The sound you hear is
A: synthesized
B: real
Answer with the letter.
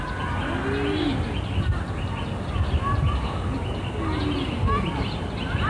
B